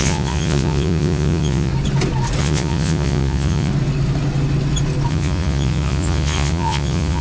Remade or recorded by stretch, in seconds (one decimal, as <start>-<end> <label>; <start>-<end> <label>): 0.0-1.7 remade; 1.7-2.4 recorded; 2.4-3.7 remade; 3.7-5.1 recorded; 5.1-7.2 remade